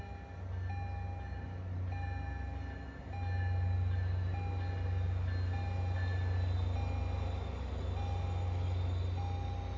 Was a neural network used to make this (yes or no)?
no